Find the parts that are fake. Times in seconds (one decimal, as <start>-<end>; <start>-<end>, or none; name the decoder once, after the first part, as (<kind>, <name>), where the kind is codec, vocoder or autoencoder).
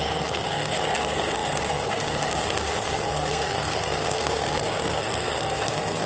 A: 0.0-6.1 (codec, SNAC)